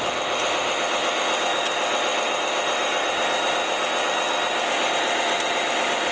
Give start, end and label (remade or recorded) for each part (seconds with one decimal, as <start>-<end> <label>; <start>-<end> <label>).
0.0-6.1 recorded